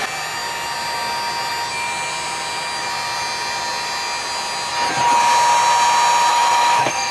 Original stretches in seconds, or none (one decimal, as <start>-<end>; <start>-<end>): 0.0-6.3